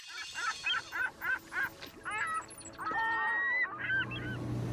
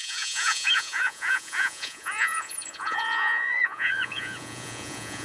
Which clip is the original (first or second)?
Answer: first